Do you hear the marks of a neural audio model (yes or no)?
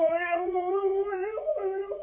yes